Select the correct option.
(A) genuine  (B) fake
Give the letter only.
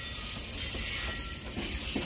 A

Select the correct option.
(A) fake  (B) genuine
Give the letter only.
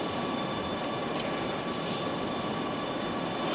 B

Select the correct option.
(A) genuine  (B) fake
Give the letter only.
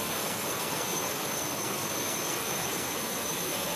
B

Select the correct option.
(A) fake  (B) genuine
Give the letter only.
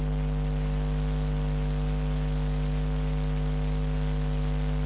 B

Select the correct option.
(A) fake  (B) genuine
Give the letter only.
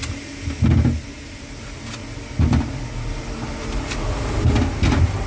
B